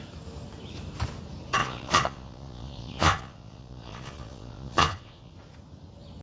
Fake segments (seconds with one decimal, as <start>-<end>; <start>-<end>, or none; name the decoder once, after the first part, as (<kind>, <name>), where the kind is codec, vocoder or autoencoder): 1.6-5.3 (vocoder, Vocos)